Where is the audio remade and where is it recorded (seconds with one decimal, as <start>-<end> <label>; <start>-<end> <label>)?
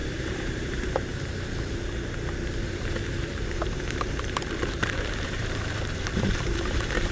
0.0-1.1 remade; 1.1-3.3 recorded; 3.3-7.1 remade